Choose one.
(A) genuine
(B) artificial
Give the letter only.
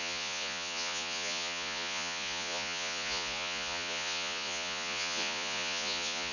B